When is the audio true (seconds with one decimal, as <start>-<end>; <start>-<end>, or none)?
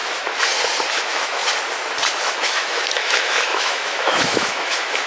0.0-0.9; 1.4-2.2